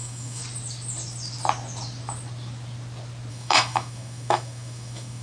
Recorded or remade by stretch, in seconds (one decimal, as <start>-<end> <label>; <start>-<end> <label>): 0.0-0.4 remade; 0.4-3.3 recorded; 3.3-5.2 remade